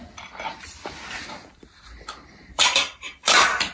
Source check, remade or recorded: remade